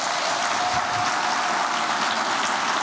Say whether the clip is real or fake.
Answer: real